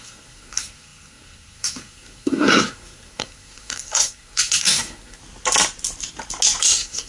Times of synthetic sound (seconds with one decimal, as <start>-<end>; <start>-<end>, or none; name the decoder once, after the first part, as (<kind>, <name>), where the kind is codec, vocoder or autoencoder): 0.0-5.2 (codec, SNAC); 6.6-7.1